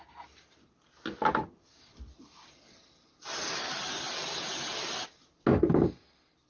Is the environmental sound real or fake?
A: real